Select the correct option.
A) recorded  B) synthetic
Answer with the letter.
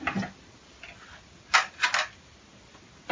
A